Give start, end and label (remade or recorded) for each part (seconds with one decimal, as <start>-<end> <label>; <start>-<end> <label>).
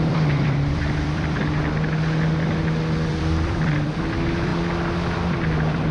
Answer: 0.0-1.4 remade; 1.4-3.1 recorded; 3.1-4.5 remade; 4.5-5.3 recorded; 5.3-5.9 remade